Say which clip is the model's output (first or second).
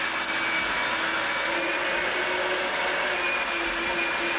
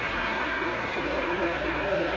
second